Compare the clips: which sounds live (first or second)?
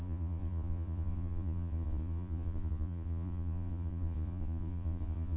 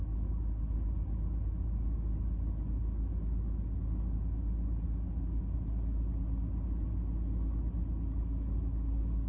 second